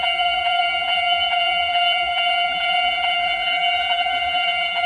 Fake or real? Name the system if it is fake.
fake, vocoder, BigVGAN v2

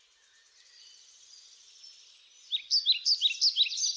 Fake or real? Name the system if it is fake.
real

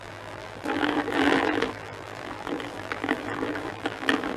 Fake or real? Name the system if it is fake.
fake, vocoder, BigVGAN v2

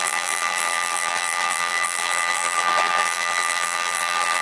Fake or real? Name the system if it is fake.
fake, vocoder, BigVGAN v2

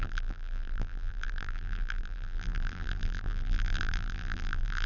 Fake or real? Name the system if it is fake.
fake, vocoder, BigVGAN v2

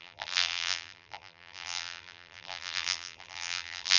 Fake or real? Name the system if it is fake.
fake, vocoder, BigVGAN v2